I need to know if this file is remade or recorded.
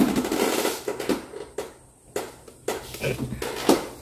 recorded